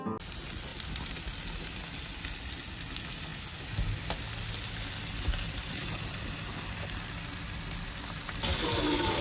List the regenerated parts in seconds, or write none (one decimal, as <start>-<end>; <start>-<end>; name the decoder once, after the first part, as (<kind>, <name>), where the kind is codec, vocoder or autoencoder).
none